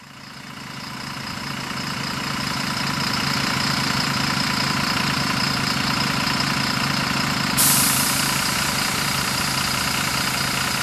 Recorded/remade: recorded